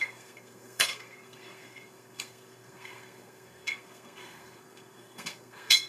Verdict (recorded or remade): remade